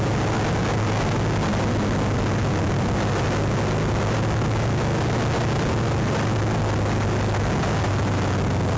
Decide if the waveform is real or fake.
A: real